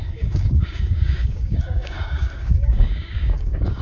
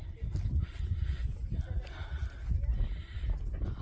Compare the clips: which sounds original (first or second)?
second